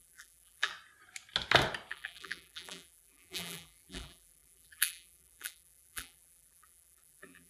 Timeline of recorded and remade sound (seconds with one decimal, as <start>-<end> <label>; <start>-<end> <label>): 0.0-0.7 remade; 0.7-1.9 recorded; 1.9-7.5 remade